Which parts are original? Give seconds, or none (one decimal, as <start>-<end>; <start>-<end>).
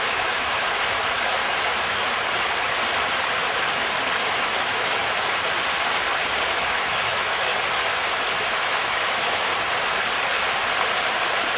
1.4-4.2; 5.0-6.5; 7.5-8.5; 9.5-11.6